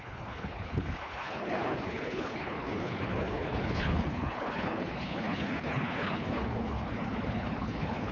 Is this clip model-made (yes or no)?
yes